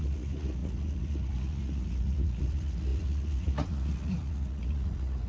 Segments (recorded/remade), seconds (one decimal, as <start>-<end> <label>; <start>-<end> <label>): 0.0-5.3 remade